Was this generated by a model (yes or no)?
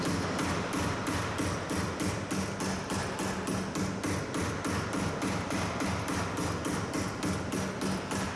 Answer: no